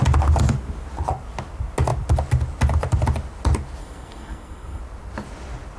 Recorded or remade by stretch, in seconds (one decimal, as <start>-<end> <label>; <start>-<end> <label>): 0.0-3.8 recorded; 3.8-4.8 remade; 4.8-5.8 recorded